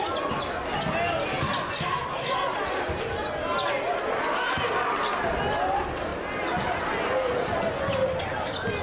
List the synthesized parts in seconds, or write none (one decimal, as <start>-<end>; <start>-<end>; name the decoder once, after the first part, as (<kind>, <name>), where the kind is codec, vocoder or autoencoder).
none